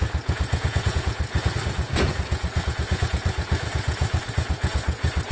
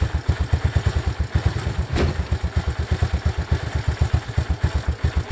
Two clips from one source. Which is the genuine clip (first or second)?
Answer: second